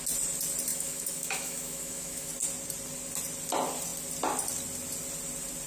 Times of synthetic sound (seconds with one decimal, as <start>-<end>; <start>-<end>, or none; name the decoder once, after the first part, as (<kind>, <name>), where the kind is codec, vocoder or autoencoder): 0.7-2.3 (autoencoder, DAC-VAE)